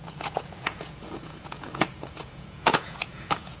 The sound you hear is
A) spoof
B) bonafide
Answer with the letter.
A